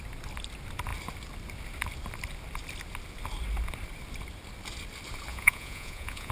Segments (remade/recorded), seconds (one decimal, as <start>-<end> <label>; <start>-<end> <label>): 0.0-5.3 recorded; 5.3-6.3 remade